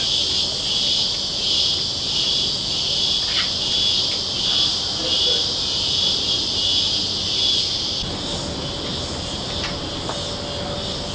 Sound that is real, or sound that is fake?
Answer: real